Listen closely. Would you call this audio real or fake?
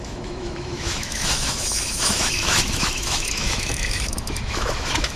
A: fake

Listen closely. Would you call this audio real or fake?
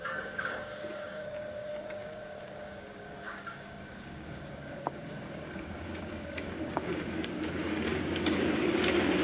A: fake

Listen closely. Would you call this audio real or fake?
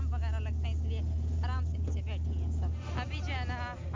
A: real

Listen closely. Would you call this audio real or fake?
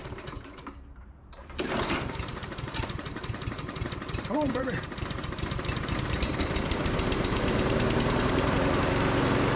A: fake